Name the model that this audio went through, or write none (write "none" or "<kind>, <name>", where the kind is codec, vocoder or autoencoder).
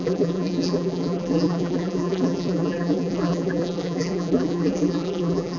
vocoder, BigVGAN v2